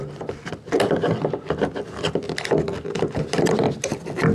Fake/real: real